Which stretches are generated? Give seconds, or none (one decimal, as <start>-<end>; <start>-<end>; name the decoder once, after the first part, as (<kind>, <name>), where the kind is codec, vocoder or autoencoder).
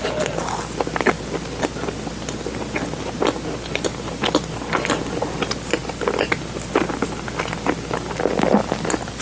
none